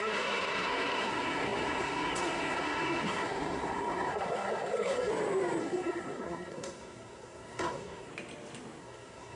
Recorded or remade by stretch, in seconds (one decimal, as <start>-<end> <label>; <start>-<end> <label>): 0.0-5.1 remade; 5.1-5.6 recorded; 5.6-8.1 remade; 8.1-8.8 recorded; 8.8-9.4 remade